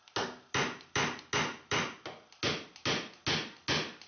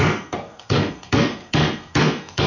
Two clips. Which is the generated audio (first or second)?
second